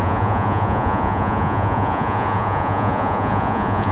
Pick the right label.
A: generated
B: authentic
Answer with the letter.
A